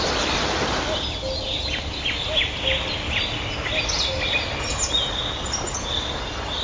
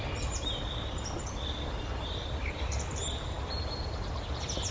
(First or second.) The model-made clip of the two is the second